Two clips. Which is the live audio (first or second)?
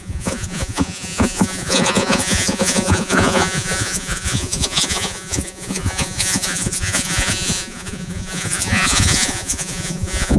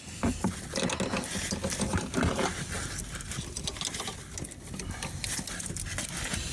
second